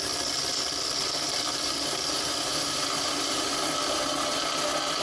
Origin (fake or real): real